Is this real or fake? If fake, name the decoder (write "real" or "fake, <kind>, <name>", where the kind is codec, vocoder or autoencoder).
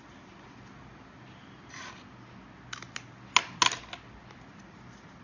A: real